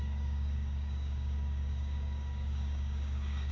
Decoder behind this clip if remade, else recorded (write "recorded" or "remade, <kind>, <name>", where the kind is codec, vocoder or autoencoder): remade, codec, DAC